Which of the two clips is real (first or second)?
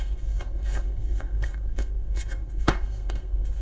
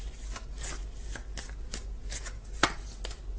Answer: second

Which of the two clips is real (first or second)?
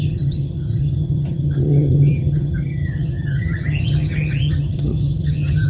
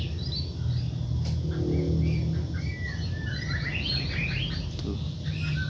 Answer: second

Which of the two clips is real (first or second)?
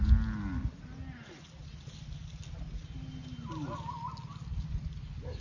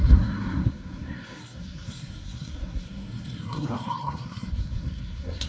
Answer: first